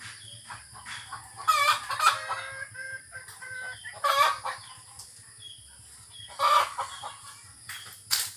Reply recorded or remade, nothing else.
recorded